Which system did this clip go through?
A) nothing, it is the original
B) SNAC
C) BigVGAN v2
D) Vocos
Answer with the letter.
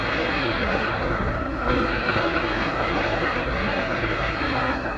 B